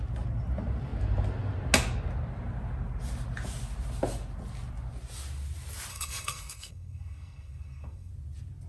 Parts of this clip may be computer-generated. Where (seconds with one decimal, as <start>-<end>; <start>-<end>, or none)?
5.9-8.1